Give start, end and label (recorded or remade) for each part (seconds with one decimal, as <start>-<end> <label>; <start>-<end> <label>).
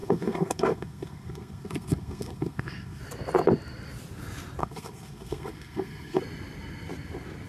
0.0-3.0 remade; 3.0-4.6 recorded; 4.6-6.2 remade; 6.2-7.5 recorded